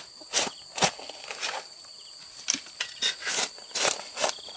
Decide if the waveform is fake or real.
real